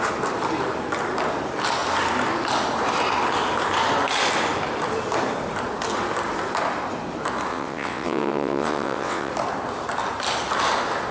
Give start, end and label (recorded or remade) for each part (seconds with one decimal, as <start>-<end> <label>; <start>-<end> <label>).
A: 0.0-7.5 recorded; 7.5-9.3 remade; 9.3-11.1 recorded

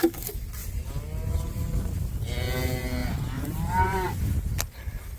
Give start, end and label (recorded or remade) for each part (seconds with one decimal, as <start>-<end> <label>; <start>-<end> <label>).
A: 0.0-3.0 recorded; 3.0-4.2 remade; 4.2-5.2 recorded

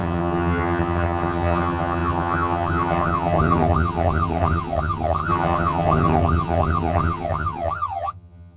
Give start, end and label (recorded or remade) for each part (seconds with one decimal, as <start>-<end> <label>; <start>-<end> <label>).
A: 0.0-8.6 remade

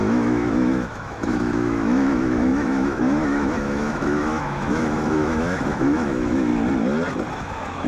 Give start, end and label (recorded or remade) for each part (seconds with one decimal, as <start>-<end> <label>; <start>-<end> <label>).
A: 0.0-6.5 remade; 6.5-7.3 recorded; 7.3-7.9 remade

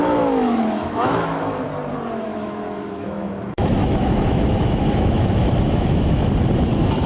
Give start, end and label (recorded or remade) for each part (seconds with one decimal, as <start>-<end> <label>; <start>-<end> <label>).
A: 0.0-1.6 remade; 1.6-2.3 recorded; 2.3-6.3 remade; 6.3-7.1 recorded